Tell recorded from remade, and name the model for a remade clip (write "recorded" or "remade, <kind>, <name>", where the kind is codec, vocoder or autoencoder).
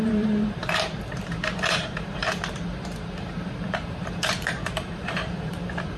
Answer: remade, vocoder, BigVGAN v2